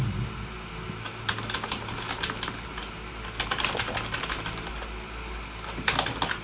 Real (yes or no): yes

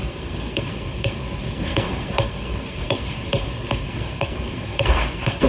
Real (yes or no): no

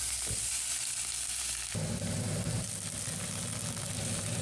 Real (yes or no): yes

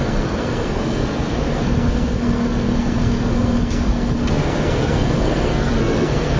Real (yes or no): no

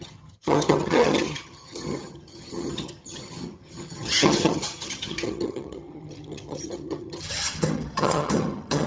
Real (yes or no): no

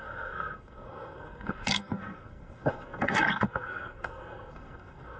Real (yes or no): no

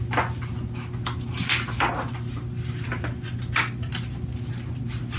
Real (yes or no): yes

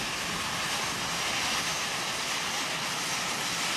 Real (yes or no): yes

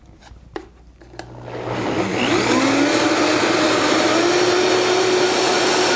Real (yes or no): yes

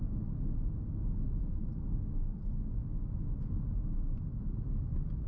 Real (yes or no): yes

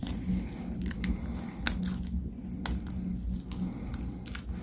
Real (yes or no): yes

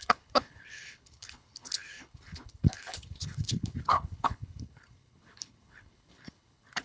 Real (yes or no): no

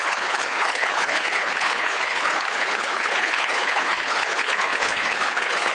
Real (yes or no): no